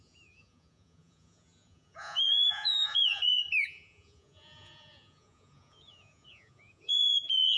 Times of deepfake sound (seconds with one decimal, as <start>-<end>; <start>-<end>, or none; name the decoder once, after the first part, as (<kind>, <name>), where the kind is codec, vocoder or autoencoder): 0.0-7.6 (vocoder, Vocos)